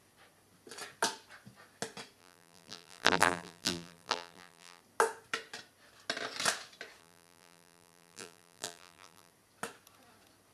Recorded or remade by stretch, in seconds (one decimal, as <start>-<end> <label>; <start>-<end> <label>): 0.0-2.2 recorded; 2.2-4.8 remade; 4.8-7.0 recorded; 7.0-9.3 remade; 9.3-10.5 recorded